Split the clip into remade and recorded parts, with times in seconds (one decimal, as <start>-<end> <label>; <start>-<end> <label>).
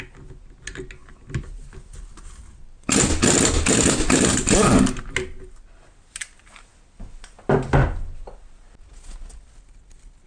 0.0-10.3 recorded